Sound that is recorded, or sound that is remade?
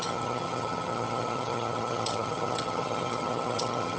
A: remade